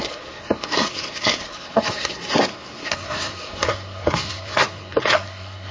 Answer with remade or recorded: remade